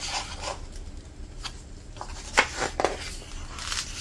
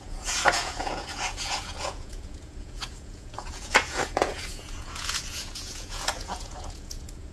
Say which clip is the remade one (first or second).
second